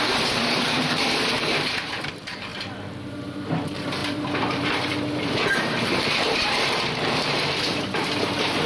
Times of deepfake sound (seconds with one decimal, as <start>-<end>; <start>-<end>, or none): 0.0-2.5; 3.1-8.7